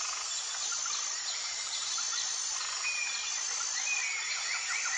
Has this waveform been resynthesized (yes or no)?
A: no